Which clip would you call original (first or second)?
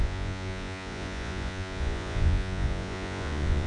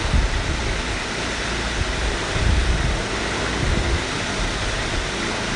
second